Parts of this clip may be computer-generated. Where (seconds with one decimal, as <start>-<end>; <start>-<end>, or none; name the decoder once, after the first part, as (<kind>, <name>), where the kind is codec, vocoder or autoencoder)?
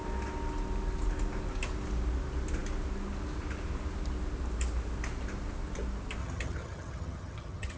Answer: 6.2-7.8 (vocoder, HiFi-GAN)